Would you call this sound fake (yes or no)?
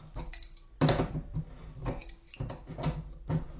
no